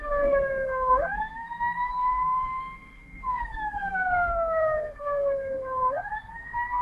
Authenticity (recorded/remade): remade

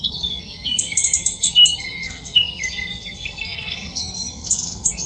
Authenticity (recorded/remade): remade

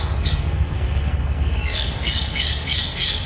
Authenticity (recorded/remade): remade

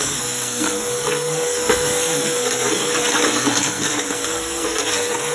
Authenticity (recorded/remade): remade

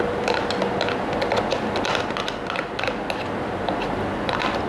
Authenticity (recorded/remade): recorded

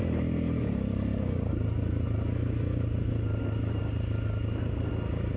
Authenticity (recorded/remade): recorded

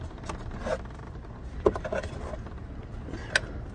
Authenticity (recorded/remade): recorded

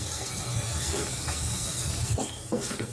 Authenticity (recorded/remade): remade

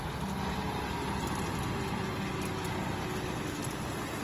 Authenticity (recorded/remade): recorded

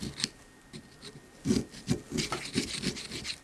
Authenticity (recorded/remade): recorded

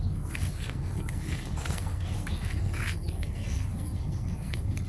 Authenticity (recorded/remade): remade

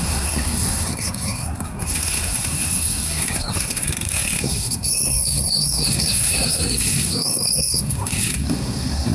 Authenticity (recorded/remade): remade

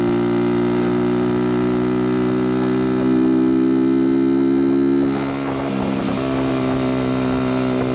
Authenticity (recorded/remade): recorded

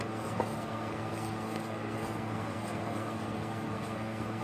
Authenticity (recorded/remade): remade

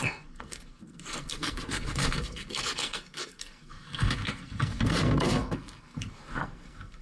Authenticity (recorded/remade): remade